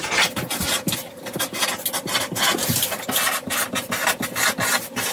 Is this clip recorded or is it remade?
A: recorded